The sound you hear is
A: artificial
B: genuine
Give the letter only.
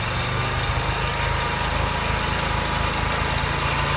B